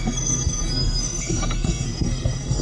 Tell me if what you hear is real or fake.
fake